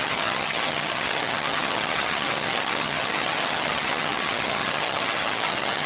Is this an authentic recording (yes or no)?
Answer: no